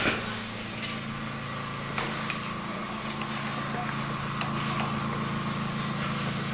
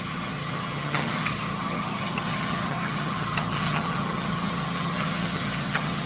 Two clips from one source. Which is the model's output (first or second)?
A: second